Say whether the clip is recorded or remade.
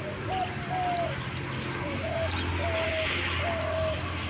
recorded